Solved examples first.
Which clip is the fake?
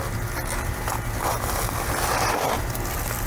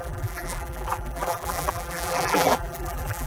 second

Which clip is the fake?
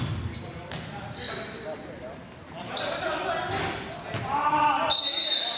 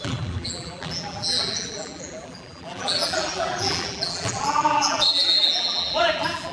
second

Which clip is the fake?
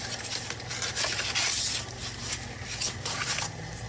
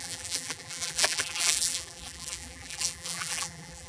second